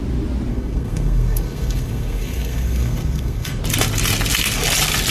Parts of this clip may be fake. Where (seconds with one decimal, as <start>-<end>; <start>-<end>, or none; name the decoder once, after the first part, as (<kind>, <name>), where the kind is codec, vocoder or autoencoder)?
0.5-3.6 (codec, SNAC)